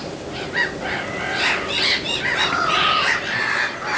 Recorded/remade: recorded